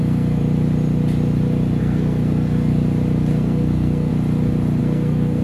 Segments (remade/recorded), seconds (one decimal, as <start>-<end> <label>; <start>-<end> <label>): 0.0-0.4 remade; 0.4-1.8 recorded; 1.8-2.7 remade; 2.7-3.3 recorded; 3.3-4.1 remade; 4.1-4.8 recorded; 4.8-5.4 remade